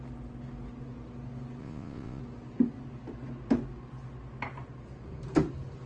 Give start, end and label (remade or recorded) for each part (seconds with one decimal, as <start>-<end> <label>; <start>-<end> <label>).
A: 0.0-1.6 recorded; 1.6-2.2 remade; 2.2-5.9 recorded